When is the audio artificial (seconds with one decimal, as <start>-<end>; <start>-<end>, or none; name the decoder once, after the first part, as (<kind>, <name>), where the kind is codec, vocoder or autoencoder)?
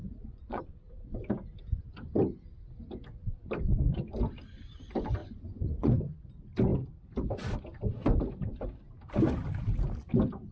0.0-0.6 (vocoder, Vocos); 5.2-5.9